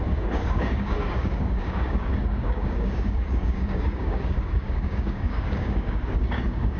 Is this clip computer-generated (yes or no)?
yes